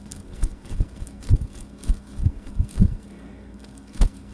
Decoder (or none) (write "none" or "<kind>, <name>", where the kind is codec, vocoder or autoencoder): codec, SNAC